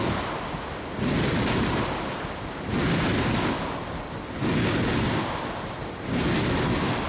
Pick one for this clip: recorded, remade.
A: recorded